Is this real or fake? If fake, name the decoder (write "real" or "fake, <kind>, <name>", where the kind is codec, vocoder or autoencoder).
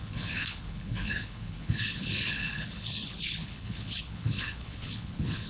fake, codec, HILCodec